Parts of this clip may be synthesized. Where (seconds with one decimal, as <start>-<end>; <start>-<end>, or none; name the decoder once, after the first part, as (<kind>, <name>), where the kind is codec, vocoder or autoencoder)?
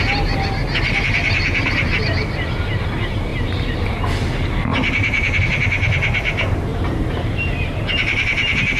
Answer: 3.3-3.9 (vocoder, BigVGAN v2); 6.7-7.8